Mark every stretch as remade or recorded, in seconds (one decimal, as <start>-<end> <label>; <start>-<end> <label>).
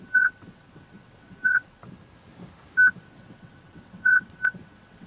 0.0-1.8 remade; 1.8-3.0 recorded; 3.0-5.1 remade